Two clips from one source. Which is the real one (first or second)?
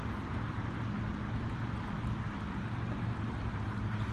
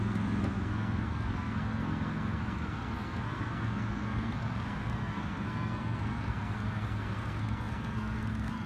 first